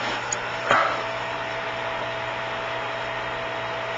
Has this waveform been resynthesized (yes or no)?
no